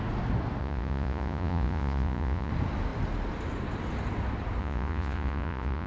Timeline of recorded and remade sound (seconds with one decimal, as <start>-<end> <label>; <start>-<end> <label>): 0.0-0.6 recorded; 0.6-2.5 remade; 2.5-4.6 recorded; 4.6-5.9 remade

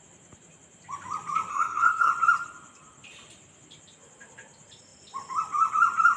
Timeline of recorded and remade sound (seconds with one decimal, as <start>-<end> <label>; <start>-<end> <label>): 0.0-1.5 recorded; 1.5-2.1 remade; 2.1-6.2 recorded

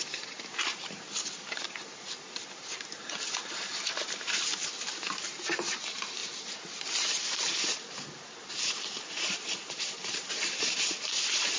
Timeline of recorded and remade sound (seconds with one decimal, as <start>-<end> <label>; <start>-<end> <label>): 0.0-6.2 remade; 6.2-6.8 recorded; 6.8-11.6 remade

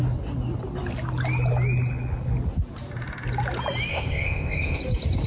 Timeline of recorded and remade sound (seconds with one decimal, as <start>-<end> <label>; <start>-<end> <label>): 0.0-3.9 recorded; 3.9-4.8 remade; 4.8-5.3 recorded

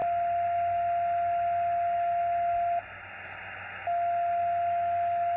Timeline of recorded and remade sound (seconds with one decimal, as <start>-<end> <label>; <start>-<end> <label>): 0.0-5.4 recorded

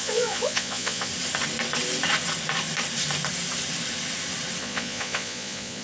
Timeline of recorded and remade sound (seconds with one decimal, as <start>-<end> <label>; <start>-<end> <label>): 0.0-1.1 remade; 1.1-4.6 recorded; 4.6-5.8 remade

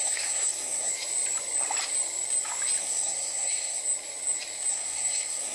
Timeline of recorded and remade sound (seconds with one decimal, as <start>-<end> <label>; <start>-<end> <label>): 0.0-0.9 remade; 0.9-2.8 recorded; 2.8-3.8 remade; 3.8-4.7 recorded; 4.7-5.5 remade